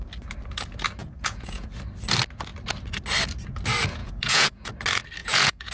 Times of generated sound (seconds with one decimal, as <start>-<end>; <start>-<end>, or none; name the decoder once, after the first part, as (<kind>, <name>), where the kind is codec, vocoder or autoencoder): 1.0-1.7 (vocoder, Vocos); 4.0-4.7; 5.2-5.7